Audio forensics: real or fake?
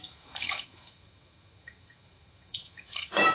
fake